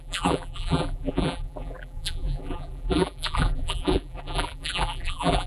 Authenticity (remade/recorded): remade